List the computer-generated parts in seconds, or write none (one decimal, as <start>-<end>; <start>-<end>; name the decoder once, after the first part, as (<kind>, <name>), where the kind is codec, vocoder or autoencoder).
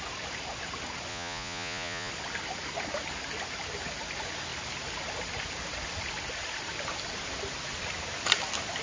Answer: 1.1-2.1 (vocoder, Vocos)